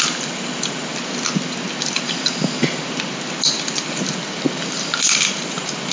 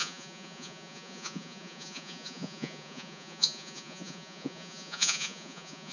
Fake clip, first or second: second